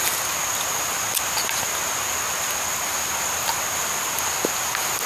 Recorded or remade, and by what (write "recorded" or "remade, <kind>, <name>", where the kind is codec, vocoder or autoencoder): recorded